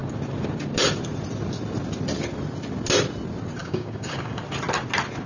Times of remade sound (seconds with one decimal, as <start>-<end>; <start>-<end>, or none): 3.6-4.4